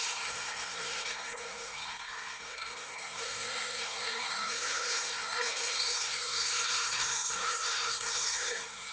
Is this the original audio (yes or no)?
no